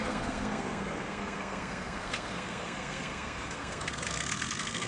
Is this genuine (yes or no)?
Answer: no